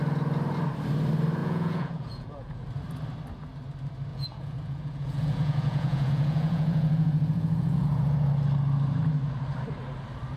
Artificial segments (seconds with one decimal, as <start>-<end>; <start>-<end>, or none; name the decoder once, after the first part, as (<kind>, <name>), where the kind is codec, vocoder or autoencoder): 1.4-2.7 (vocoder, Vocos); 4.1-8.3